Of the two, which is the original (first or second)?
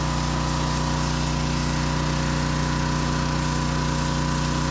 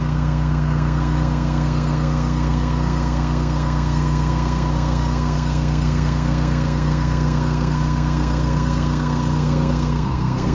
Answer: first